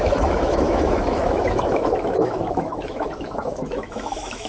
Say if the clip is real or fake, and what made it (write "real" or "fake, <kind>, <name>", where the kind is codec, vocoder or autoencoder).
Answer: fake, autoencoder, DAC-VAE